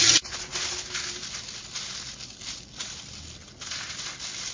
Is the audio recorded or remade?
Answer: recorded